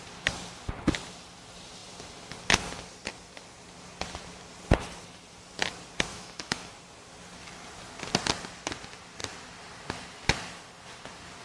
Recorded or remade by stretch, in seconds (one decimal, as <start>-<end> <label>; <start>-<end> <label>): 0.0-6.1 recorded; 6.1-6.7 remade; 6.7-11.4 recorded